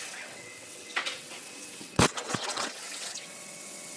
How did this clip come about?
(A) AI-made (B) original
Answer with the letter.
A